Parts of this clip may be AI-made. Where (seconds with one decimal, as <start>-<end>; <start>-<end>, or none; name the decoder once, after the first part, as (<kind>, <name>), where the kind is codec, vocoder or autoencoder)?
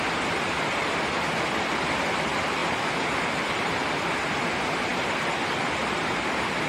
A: none